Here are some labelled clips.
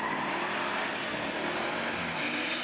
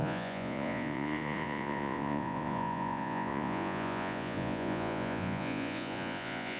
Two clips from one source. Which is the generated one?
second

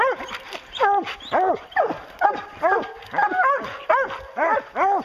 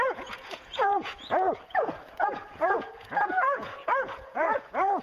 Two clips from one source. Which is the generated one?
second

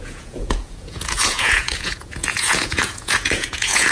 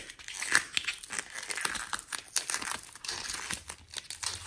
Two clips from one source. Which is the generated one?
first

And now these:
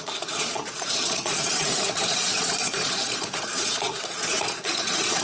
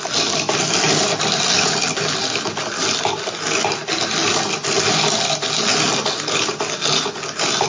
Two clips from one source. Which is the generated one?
first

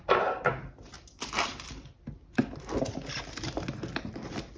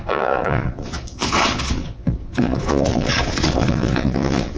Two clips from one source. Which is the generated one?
second